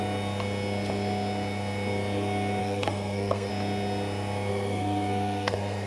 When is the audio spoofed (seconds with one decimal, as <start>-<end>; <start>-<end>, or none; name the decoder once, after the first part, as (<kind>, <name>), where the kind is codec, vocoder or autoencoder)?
2.6-3.5 (codec, SNAC); 4.5-5.9